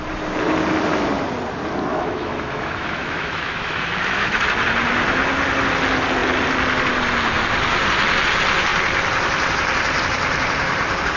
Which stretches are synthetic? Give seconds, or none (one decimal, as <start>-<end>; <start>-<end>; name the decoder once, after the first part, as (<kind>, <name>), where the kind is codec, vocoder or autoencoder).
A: 1.9-4.4 (autoencoder, DAC-VAE)